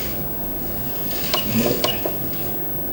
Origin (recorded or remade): recorded